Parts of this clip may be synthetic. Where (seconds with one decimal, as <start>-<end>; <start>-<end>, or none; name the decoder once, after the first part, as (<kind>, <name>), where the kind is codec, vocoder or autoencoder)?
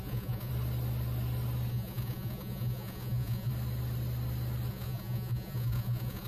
0.0-0.5 (vocoder, Vocos); 1.7-3.5; 4.7-6.3